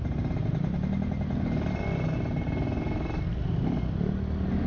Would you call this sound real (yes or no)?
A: yes